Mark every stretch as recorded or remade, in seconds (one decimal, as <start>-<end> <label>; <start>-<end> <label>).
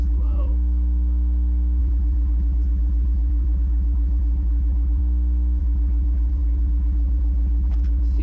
0.0-0.5 remade; 0.5-1.8 recorded; 1.8-5.0 remade; 5.0-5.6 recorded; 5.6-8.2 remade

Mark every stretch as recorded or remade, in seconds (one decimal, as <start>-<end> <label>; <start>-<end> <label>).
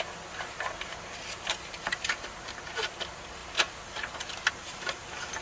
0.0-5.4 recorded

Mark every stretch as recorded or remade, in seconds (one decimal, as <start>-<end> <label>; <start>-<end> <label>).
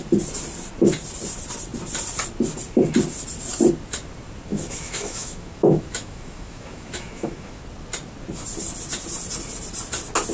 0.0-4.5 recorded; 4.5-7.6 remade; 7.6-10.3 recorded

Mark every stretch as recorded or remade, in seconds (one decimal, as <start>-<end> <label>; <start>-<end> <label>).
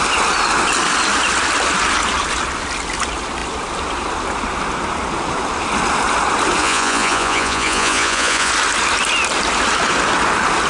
0.0-6.6 recorded; 6.6-8.5 remade; 8.5-10.7 recorded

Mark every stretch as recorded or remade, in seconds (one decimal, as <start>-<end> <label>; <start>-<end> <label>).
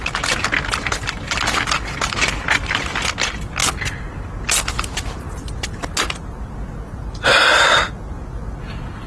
0.0-9.1 recorded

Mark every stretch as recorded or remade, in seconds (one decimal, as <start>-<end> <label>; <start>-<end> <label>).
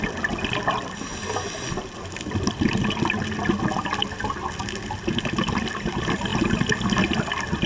0.0-7.7 recorded